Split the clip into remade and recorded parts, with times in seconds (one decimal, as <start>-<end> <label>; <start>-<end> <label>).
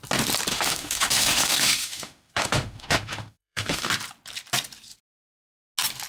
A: 0.0-0.5 recorded; 0.5-3.9 remade; 3.9-6.1 recorded